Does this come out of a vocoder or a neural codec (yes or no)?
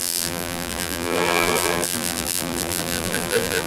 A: yes